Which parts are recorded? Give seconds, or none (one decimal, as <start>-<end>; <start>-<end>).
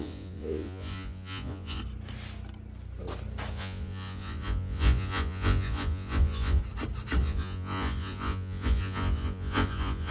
1.8-3.5; 6.6-7.2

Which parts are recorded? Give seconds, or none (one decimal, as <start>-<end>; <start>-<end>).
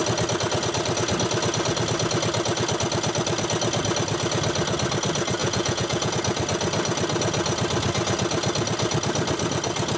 0.0-5.4; 6.1-10.0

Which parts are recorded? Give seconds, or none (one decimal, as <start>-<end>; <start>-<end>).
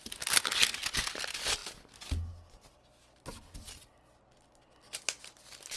0.0-5.8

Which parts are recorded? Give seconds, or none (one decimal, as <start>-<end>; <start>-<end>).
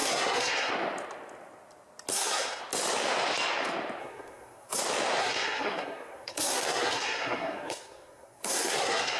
0.7-2.1; 2.6-4.0; 4.8-5.2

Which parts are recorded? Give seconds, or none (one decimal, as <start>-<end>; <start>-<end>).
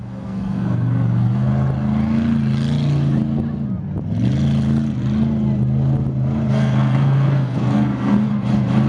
1.5-6.5; 8.3-8.9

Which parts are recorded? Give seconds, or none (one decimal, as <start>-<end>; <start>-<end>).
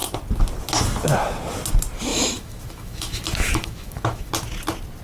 0.0-2.1; 4.3-5.0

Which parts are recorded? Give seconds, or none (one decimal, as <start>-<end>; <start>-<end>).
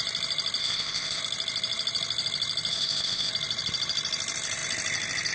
0.0-0.6; 1.2-2.7; 3.3-5.3